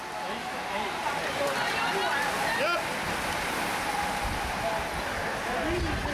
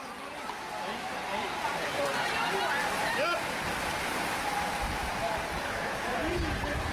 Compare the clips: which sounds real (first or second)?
first